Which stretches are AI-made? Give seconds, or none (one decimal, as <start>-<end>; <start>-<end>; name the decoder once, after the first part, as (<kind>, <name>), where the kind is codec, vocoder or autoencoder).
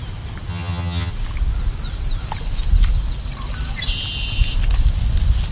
0.5-1.1 (vocoder, HiFi-GAN)